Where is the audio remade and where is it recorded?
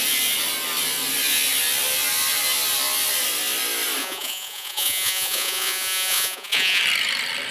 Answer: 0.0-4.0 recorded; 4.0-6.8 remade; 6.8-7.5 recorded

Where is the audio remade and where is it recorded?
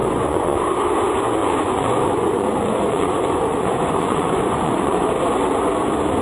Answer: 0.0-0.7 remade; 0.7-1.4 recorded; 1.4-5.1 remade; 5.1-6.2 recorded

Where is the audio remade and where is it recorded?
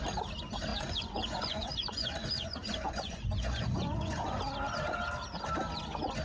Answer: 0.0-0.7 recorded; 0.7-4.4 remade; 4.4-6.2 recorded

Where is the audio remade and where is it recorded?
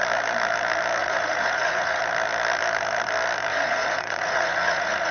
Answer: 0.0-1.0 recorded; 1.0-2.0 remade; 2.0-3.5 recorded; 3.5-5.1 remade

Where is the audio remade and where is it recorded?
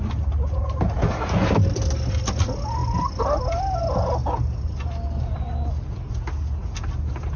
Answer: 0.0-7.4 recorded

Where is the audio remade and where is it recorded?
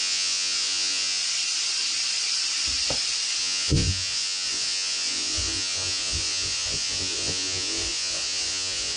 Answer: 0.0-1.2 remade; 1.2-3.4 recorded; 3.4-9.0 remade